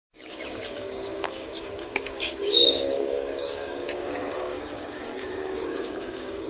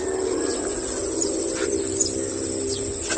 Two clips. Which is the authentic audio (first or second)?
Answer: second